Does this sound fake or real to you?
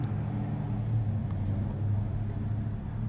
real